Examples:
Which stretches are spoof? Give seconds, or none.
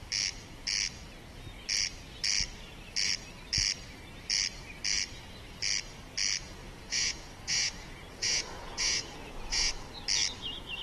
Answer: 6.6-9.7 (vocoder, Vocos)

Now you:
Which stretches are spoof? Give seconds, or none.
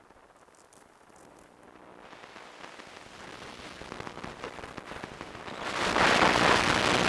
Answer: none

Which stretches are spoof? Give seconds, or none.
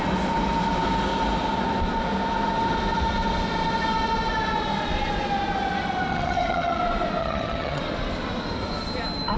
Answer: 6.1-6.8 (vocoder, HiFi-GAN); 7.2-7.8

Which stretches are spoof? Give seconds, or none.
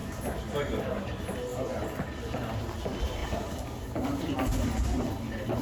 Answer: none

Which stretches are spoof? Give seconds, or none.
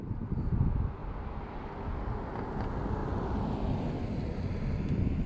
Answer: none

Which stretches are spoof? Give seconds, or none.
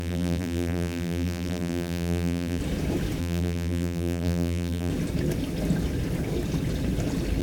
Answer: 0.0-2.6 (vocoder, BigVGAN v2); 3.2-4.9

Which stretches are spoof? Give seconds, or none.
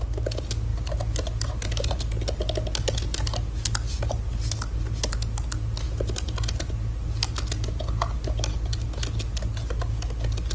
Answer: none